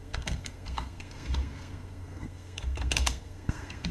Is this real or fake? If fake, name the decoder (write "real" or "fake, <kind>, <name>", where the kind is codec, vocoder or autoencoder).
fake, codec, SNAC